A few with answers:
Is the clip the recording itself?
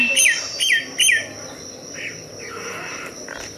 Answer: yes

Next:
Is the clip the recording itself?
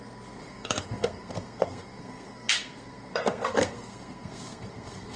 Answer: no